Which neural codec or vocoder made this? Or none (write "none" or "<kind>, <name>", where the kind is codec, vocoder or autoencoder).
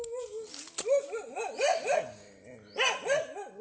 none